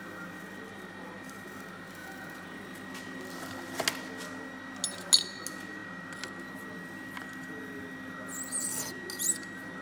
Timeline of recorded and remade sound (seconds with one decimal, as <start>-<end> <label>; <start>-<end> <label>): 0.0-2.0 recorded; 2.0-2.6 remade; 2.6-9.8 recorded